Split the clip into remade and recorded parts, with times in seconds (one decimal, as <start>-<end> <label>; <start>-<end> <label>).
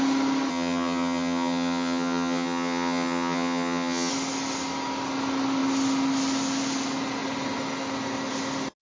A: 0.0-0.5 recorded; 0.5-4.1 remade; 4.1-8.8 recorded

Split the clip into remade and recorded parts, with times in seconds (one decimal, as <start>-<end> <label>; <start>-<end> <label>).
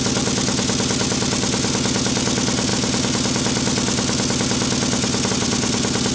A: 0.0-6.1 recorded